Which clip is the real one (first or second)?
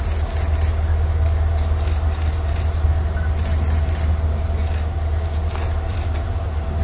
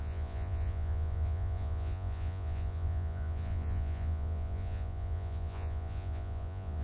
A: first